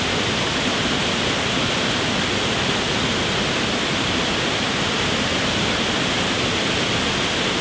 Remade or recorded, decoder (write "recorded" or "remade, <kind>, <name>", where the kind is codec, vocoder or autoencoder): recorded